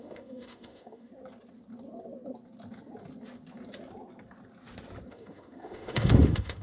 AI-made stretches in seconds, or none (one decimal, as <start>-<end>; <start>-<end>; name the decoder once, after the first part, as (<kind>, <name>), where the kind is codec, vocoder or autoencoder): 0.0-1.1 (autoencoder, DAC-VAE); 5.1-6.6